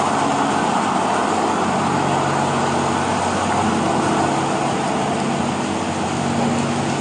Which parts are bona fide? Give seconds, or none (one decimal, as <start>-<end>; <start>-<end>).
0.0-7.0